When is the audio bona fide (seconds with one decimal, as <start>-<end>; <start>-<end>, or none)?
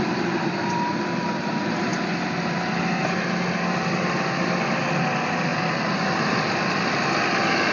0.0-7.7